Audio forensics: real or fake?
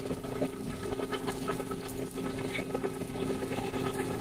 real